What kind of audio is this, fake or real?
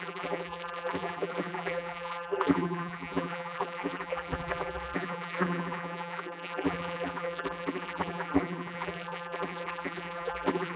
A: fake